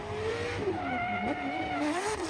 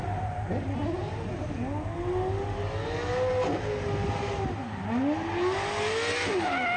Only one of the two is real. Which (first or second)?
second